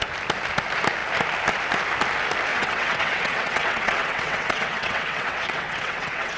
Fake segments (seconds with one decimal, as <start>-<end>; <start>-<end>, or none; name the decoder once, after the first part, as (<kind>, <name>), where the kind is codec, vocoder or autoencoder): 2.5-6.4 (vocoder, WaveNeXt)